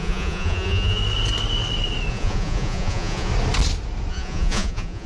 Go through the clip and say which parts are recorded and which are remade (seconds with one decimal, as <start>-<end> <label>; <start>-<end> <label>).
0.0-1.0 remade; 1.0-2.1 recorded; 2.1-3.3 remade; 3.3-4.1 recorded; 4.1-5.1 remade